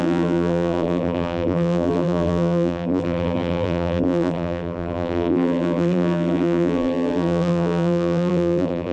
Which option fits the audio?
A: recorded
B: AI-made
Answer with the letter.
B